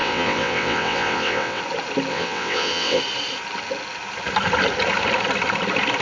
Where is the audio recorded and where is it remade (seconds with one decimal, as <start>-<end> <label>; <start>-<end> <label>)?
0.0-1.6 remade; 1.6-2.1 recorded; 2.1-3.0 remade; 3.0-6.0 recorded